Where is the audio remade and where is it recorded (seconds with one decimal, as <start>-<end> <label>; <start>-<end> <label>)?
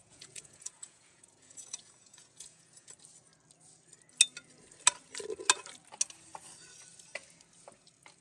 0.0-2.9 remade; 2.9-8.2 recorded